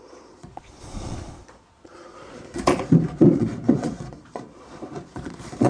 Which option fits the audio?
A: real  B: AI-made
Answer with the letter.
B